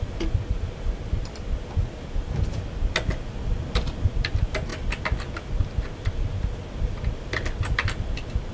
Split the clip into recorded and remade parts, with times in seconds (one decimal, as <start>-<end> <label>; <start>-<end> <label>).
0.0-8.5 recorded